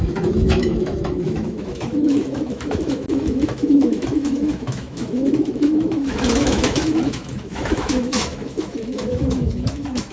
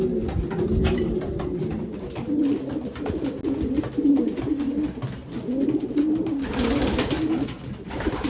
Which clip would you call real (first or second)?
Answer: second